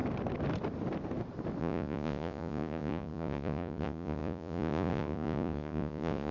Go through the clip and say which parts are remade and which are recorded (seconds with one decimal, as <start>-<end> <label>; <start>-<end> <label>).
0.0-1.6 recorded; 1.6-6.3 remade